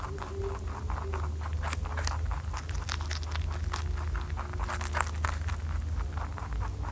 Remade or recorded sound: recorded